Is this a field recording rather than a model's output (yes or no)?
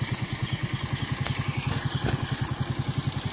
yes